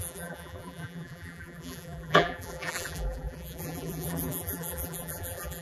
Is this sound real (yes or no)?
no